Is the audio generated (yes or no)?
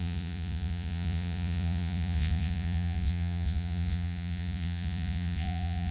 yes